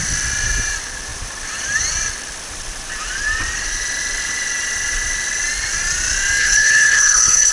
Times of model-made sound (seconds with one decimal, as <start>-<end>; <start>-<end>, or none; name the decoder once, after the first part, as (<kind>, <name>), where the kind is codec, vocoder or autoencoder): 6.4-7.5 (codec, HILCodec)